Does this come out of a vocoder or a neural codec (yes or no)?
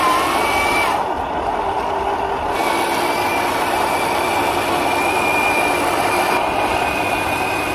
no